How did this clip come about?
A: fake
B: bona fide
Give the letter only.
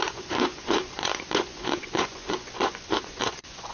A